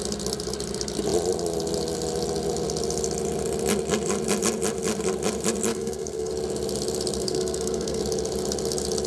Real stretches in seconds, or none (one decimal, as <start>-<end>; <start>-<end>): 0.0-5.7; 6.3-7.2; 8.0-9.1

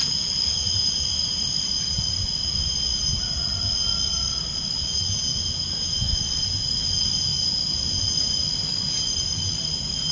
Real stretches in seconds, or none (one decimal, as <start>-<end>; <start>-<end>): 0.0-10.1